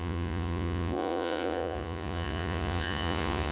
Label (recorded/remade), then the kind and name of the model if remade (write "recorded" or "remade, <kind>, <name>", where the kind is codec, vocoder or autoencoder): remade, vocoder, Vocos